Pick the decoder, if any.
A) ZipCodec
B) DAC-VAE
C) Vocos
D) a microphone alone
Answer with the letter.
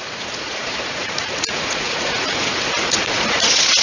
C